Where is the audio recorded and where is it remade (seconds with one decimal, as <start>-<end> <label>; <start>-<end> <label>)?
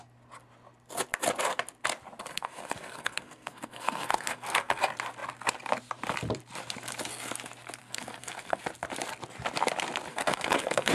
0.0-2.2 recorded; 2.2-4.8 remade; 4.8-7.8 recorded; 7.8-8.6 remade; 8.6-10.1 recorded; 10.1-10.9 remade